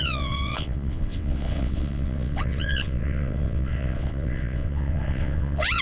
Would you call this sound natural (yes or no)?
no